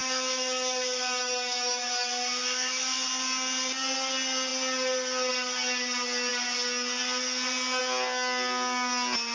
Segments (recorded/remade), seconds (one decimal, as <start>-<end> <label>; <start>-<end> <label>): 0.0-3.0 remade; 3.0-9.3 recorded